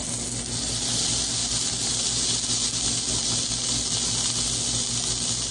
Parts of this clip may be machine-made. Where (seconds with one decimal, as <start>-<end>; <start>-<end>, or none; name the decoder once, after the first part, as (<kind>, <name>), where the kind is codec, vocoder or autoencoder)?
none